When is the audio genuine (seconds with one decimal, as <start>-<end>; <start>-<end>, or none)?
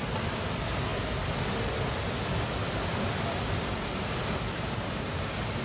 0.0-5.6